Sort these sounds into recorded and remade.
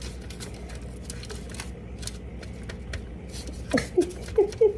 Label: recorded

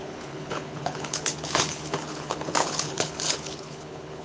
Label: remade